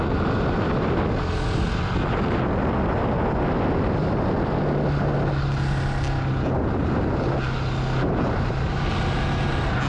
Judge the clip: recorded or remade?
recorded